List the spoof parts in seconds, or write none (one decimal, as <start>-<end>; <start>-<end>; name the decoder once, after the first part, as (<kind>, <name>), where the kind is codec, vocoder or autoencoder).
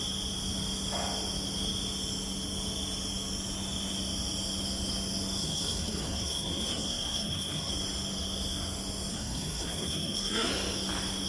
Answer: 5.4-7.7 (codec, SNAC); 9.1-10.5